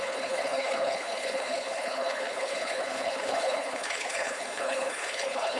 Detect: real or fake fake